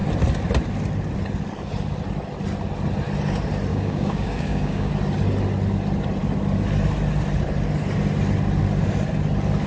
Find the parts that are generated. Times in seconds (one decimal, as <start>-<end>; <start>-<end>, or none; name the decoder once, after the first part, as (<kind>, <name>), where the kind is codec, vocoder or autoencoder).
3.7-4.9 (codec, DAC)